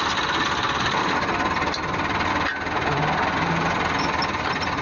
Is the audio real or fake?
real